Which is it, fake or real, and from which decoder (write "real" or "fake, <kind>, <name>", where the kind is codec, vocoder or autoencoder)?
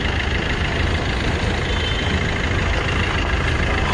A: real